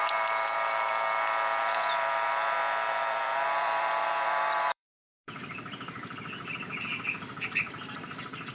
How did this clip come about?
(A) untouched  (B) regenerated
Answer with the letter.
B